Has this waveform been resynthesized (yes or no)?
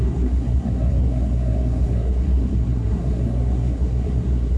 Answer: yes